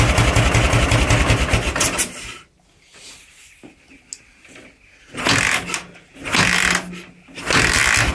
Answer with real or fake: real